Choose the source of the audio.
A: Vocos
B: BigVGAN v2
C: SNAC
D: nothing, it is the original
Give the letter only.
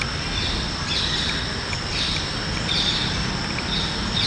D